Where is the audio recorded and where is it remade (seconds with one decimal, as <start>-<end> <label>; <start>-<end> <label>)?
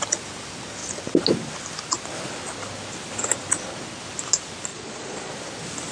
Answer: 0.0-4.7 recorded; 4.7-5.3 remade; 5.3-5.9 recorded